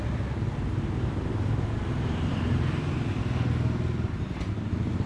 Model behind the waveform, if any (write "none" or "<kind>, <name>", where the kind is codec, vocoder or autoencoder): none